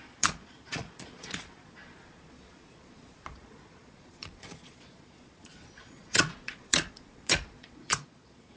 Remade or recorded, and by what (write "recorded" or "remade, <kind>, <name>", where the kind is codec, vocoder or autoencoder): remade, vocoder, Vocos